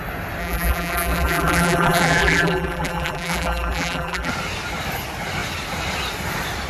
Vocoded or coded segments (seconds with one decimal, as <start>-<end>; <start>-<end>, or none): 0.4-4.3